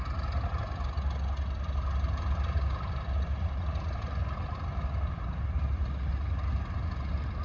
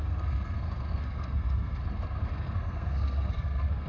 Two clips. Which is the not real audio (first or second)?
second